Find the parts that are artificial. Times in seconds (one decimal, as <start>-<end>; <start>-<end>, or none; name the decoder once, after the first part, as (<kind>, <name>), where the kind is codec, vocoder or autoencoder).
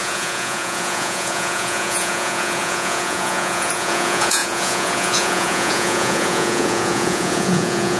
0.0-8.0 (vocoder, Vocos)